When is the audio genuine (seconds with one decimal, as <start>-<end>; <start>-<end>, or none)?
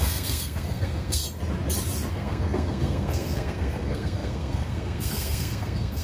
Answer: 1.2-2.1